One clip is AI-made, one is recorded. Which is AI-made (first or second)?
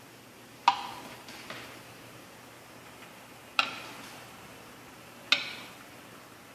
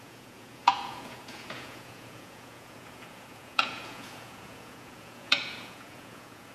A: second